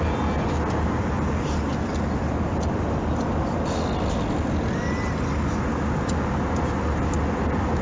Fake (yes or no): no